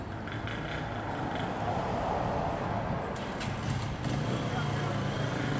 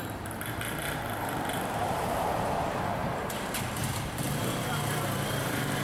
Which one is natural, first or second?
first